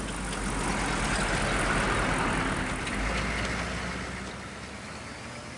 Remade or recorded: recorded